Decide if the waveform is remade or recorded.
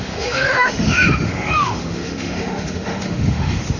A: remade